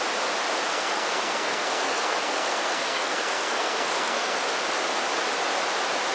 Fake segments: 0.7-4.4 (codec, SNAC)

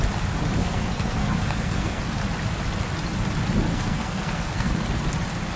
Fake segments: 0.6-2.0 (codec, SNAC); 3.7-4.9

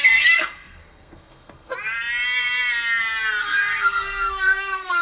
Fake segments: 0.0-1.7 (codec, SNAC); 3.4-5.0

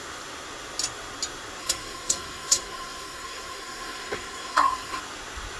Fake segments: 1.6-5.0 (codec, SNAC)

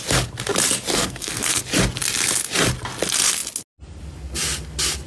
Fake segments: 0.9-1.6 (codec, SNAC)